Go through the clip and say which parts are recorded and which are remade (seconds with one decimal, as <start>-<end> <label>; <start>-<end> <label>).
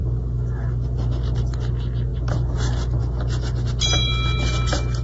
0.0-5.0 recorded